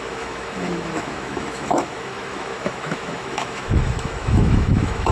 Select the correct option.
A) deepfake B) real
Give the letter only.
A